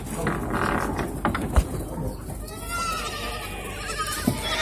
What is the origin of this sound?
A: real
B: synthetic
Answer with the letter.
A